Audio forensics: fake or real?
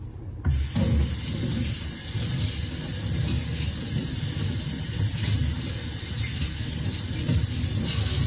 real